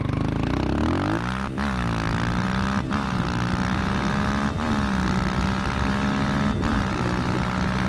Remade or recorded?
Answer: recorded